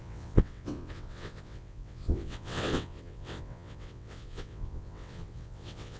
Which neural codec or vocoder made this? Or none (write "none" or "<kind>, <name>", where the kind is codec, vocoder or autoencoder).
vocoder, WaveNeXt